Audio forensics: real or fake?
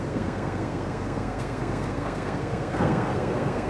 fake